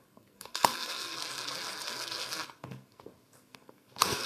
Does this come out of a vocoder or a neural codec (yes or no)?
yes